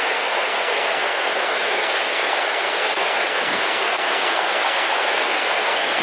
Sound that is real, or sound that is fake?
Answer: fake